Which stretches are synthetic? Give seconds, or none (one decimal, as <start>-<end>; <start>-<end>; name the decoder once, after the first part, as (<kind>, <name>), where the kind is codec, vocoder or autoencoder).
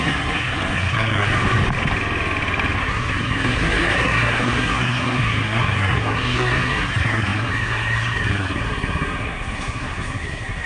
0.0-1.3 (codec, SNAC); 2.8-10.7